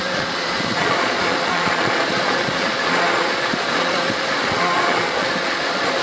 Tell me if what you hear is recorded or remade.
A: remade